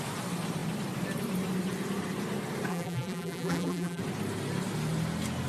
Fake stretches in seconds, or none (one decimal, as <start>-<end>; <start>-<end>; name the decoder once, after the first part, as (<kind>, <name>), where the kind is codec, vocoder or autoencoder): 2.7-4.0 (vocoder, BigVGAN v2)

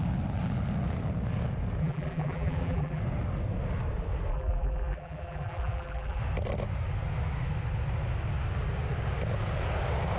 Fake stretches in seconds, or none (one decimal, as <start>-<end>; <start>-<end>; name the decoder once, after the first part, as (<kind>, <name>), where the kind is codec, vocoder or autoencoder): 1.8-3.0 (vocoder, BigVGAN v2); 4.3-6.2